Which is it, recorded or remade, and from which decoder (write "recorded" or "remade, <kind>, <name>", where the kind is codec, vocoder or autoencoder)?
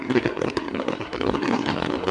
remade, codec, SNAC